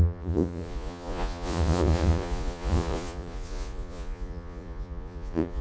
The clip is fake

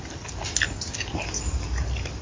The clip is real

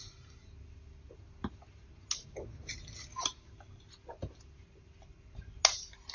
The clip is real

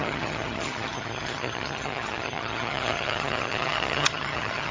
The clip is fake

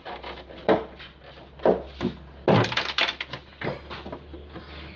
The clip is real